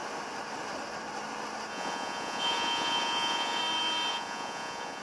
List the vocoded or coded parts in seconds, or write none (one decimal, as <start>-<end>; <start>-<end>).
1.7-3.6; 4.1-5.0